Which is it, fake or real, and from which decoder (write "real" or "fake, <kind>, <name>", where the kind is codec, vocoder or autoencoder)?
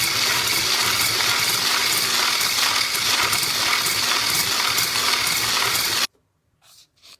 real